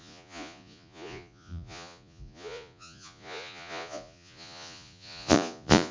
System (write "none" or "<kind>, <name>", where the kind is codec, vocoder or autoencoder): vocoder, Vocos